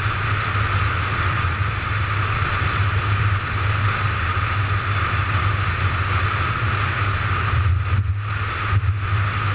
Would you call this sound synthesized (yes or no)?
no